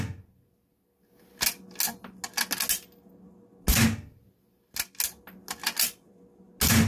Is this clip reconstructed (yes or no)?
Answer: no